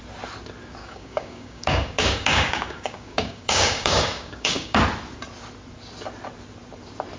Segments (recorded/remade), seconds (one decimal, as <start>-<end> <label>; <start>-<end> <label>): 0.0-0.8 recorded; 0.8-4.8 remade; 4.8-7.2 recorded